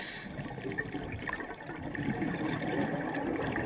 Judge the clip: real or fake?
real